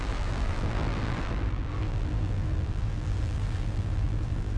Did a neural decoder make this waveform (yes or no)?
yes